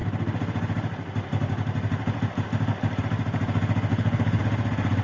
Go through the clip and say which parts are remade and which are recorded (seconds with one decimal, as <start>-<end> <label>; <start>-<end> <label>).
0.0-3.9 recorded; 3.9-4.4 remade; 4.4-5.0 recorded